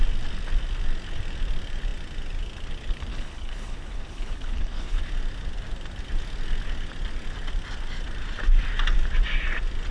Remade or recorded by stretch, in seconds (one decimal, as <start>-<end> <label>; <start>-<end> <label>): 0.0-3.1 recorded; 3.1-5.0 remade; 5.0-9.9 recorded